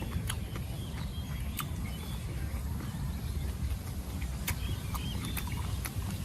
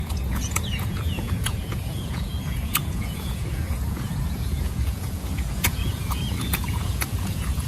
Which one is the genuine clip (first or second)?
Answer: first